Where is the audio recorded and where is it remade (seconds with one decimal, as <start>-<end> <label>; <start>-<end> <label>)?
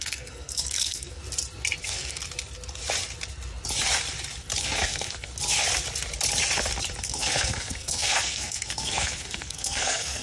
0.0-1.2 remade; 1.2-1.8 recorded; 1.8-2.2 remade; 2.2-4.6 recorded; 4.6-5.3 remade; 5.3-7.0 recorded; 7.0-10.2 remade